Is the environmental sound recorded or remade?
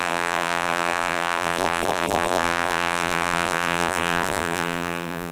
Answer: remade